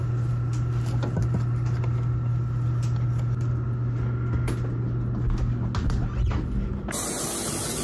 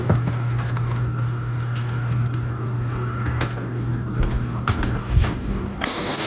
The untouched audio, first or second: first